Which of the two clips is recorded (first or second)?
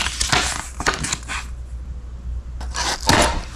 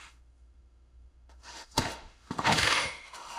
first